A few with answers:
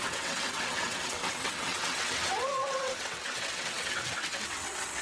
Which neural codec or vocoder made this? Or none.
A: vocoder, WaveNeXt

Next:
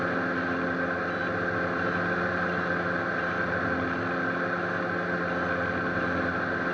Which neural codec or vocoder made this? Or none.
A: none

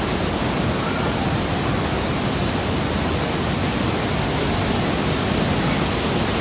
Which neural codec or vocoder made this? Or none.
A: none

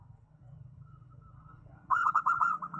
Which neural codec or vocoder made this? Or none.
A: vocoder, WaveNeXt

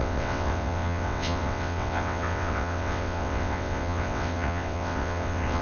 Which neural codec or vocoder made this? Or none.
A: vocoder, WaveNeXt